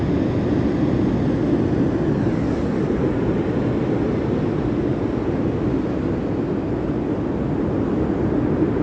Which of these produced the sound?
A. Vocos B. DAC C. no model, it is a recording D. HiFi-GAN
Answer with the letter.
C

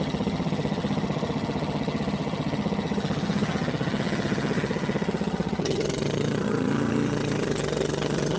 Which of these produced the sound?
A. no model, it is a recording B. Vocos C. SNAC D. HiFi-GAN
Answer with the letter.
D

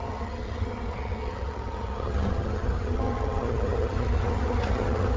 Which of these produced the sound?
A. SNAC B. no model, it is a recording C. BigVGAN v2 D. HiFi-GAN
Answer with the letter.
D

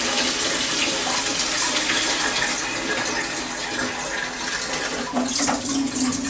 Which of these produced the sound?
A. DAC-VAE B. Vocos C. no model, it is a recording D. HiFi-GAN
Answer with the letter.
C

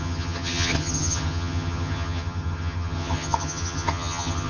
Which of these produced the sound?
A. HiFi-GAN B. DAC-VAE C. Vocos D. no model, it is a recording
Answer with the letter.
A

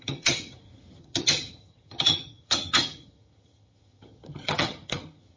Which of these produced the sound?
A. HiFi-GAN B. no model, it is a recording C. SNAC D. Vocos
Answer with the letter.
A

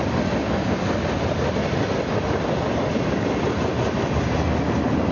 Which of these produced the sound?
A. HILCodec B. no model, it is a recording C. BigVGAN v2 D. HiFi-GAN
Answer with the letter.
B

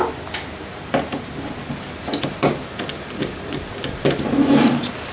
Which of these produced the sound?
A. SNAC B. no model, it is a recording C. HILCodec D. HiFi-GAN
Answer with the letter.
B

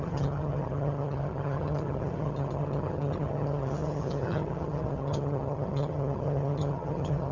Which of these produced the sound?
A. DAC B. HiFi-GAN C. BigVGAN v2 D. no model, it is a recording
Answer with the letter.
B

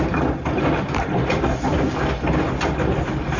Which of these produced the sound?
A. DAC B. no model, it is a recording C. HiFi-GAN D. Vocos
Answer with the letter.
B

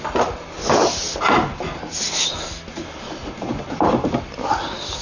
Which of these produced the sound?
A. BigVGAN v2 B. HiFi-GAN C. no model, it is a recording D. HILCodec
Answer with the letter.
C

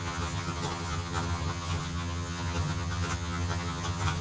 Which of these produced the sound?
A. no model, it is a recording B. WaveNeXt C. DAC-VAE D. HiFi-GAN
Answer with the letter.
D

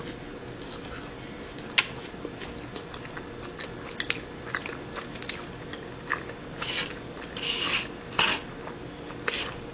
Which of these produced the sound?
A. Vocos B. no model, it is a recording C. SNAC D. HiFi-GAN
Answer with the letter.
B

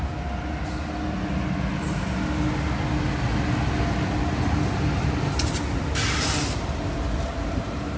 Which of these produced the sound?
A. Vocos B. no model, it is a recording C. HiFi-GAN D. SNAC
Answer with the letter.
B